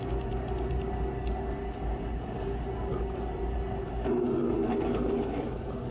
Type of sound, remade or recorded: recorded